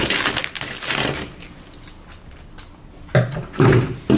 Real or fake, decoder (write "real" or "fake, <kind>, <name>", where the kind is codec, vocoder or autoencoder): real